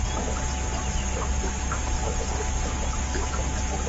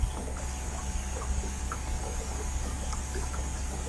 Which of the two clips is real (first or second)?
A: first